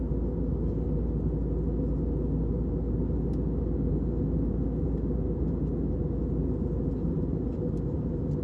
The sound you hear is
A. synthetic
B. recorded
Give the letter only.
B